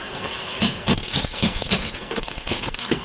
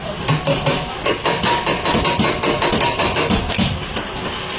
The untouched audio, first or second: second